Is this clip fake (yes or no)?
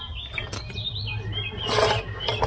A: no